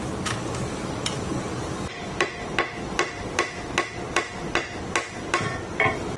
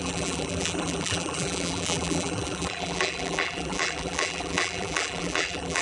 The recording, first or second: first